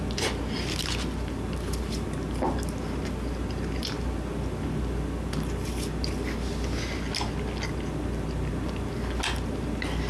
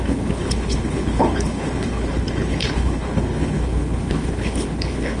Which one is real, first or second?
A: first